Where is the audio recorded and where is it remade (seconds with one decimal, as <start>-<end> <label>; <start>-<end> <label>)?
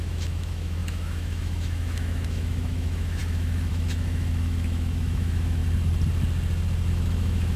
0.0-5.6 remade; 5.6-6.9 recorded; 6.9-7.6 remade